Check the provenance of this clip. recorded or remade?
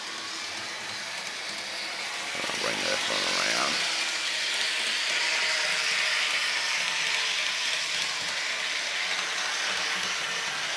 recorded